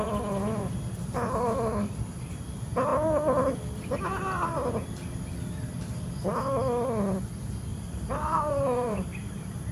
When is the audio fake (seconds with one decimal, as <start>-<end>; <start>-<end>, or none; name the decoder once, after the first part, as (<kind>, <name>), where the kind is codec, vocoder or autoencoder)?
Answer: 7.7-9.1 (vocoder, BigVGAN v2)